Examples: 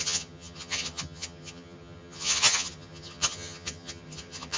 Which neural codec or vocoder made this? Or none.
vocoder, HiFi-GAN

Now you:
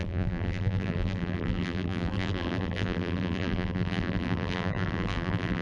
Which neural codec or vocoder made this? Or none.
vocoder, BigVGAN v2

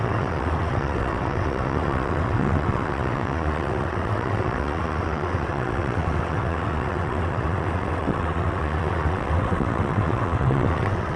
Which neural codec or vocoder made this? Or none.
vocoder, WaveNeXt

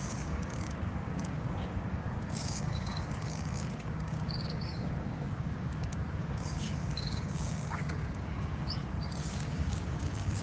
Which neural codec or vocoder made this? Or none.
codec, DAC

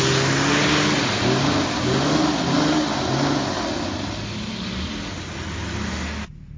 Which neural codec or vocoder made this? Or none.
none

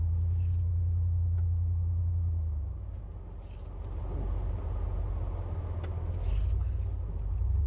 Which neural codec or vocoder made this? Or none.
none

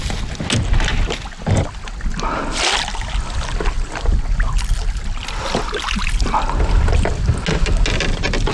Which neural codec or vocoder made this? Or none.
none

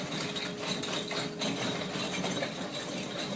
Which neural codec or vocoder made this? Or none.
none